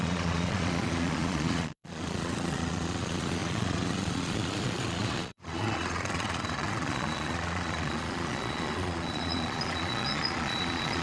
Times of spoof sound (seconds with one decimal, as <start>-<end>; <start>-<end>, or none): 0.0-11.0